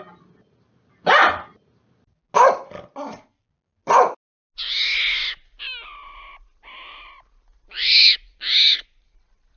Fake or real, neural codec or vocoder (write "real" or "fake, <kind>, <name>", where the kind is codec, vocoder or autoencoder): real